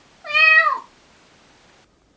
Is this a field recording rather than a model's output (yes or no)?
yes